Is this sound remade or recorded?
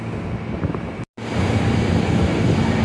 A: recorded